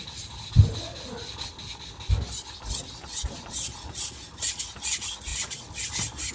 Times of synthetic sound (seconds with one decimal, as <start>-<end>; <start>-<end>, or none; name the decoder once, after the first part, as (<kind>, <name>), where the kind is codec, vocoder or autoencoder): 0.0-1.5 (vocoder, BigVGAN v2); 5.3-6.3